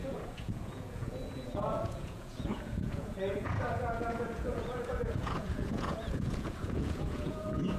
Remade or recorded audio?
remade